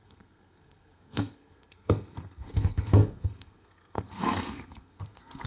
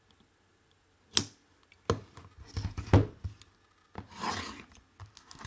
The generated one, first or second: first